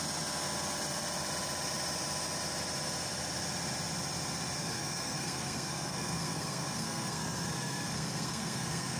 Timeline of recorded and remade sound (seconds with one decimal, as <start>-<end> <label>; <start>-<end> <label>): 0.0-4.6 recorded; 4.6-9.0 remade